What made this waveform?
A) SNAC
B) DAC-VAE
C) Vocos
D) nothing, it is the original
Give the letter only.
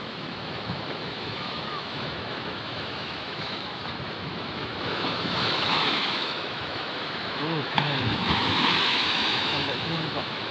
B